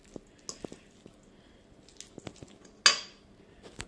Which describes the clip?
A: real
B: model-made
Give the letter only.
A